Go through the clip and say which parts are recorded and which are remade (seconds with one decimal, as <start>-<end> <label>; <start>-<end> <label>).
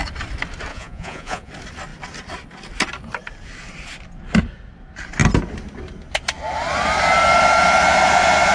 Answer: 0.0-0.7 recorded; 0.7-1.5 remade; 1.5-8.5 recorded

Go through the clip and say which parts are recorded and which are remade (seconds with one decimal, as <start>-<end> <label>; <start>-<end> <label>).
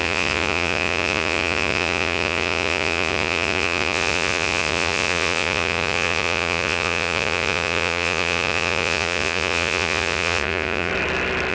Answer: 0.0-10.9 remade; 10.9-11.5 recorded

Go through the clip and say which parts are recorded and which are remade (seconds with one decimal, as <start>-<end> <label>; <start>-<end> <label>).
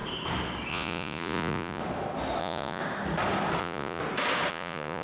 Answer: 0.0-0.7 recorded; 0.7-1.8 remade; 1.8-2.4 recorded; 2.4-2.8 remade; 2.8-3.6 recorded; 3.6-4.0 remade; 4.0-4.5 recorded; 4.5-5.0 remade